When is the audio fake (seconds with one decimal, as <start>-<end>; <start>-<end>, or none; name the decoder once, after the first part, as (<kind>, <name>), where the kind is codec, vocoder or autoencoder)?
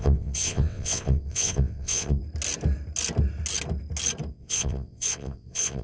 0.0-2.2 (vocoder, WaveNeXt); 4.3-5.8